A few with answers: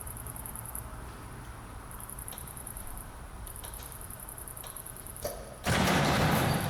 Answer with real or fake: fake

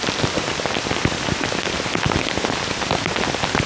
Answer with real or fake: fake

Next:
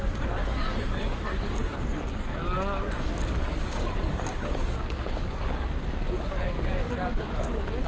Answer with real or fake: fake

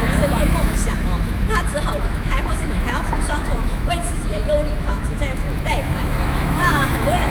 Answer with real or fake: fake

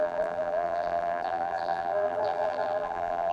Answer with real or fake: fake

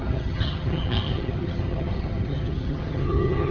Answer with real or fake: fake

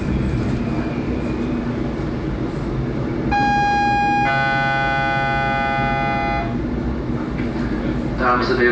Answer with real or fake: real